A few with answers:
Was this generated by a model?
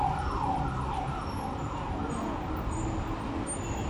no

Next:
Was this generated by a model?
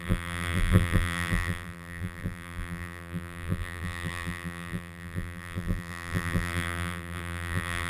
yes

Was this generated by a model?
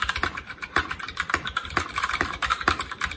yes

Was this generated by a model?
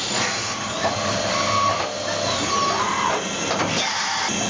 no